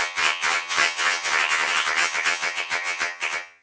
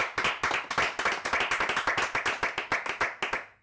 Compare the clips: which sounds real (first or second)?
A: second